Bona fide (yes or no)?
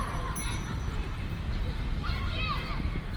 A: no